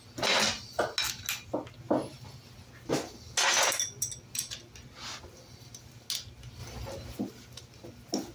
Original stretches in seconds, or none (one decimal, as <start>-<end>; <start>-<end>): 0.0-8.3